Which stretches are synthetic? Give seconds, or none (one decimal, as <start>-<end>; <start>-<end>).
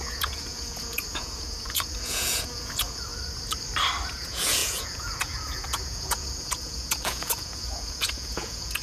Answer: 0.0-3.1; 4.1-8.8